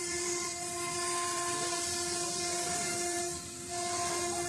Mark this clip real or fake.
fake